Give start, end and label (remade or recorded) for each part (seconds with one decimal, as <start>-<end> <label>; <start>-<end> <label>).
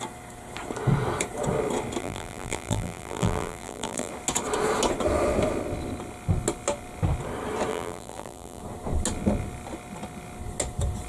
0.0-2.0 recorded; 2.0-4.1 remade; 4.1-7.7 recorded; 7.7-8.6 remade; 8.6-11.1 recorded